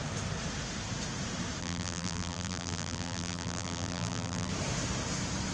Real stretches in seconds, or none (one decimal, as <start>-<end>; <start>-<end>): 0.0-1.6; 4.5-5.5